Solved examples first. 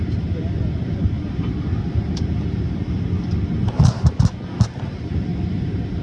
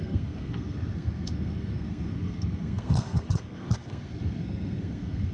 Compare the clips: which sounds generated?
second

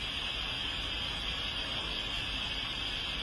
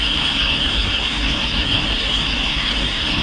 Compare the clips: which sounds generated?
second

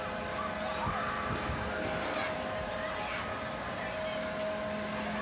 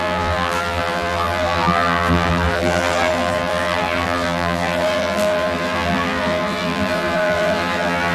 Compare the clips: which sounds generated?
second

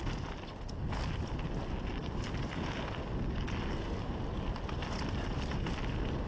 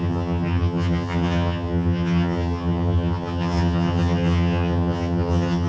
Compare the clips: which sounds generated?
second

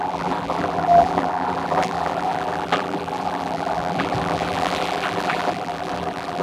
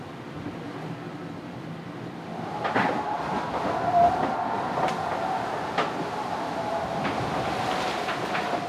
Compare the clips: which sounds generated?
first